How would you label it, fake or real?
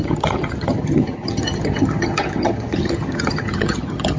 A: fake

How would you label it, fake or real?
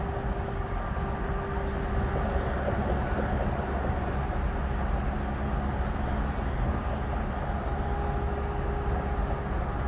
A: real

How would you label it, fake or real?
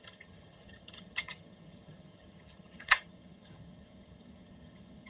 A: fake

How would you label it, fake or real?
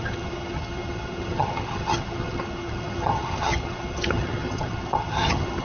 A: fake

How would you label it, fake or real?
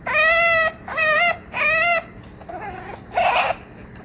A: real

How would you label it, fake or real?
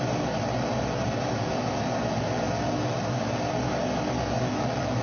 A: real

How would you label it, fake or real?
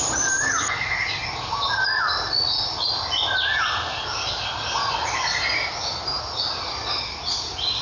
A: real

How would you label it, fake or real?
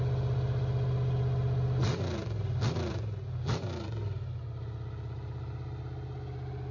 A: real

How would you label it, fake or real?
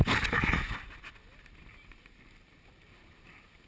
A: real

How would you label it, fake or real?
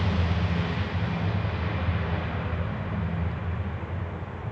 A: real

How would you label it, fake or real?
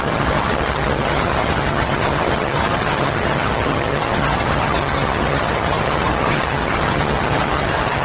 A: fake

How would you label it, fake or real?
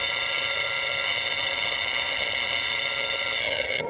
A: fake